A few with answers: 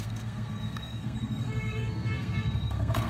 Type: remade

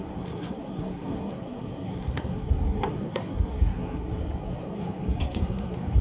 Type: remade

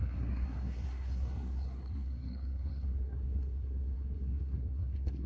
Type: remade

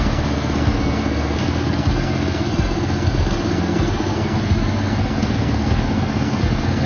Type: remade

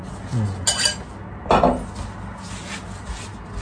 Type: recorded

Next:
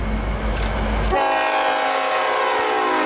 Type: recorded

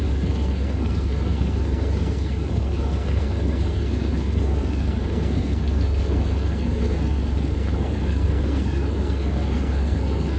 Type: remade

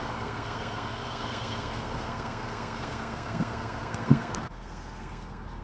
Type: remade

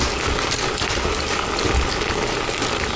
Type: recorded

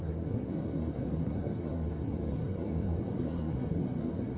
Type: remade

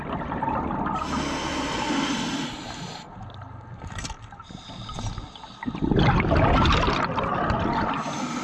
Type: recorded